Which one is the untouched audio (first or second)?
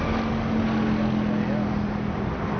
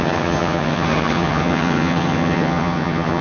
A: first